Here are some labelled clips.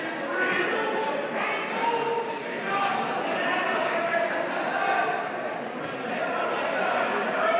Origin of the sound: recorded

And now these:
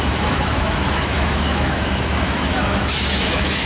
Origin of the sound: remade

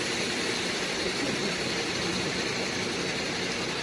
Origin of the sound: recorded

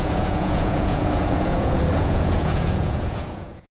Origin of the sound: remade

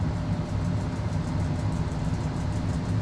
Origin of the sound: recorded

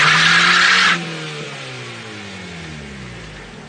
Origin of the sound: recorded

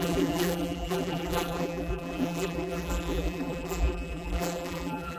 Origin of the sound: remade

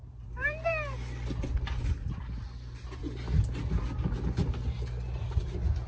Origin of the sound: recorded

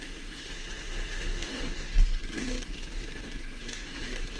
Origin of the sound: remade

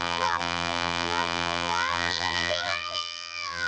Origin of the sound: remade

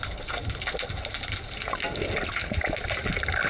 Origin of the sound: recorded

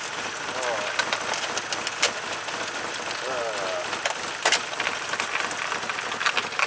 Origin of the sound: recorded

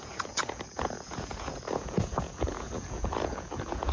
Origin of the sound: remade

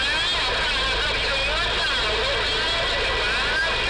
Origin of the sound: recorded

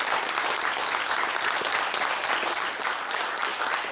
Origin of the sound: recorded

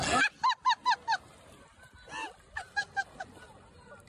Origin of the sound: recorded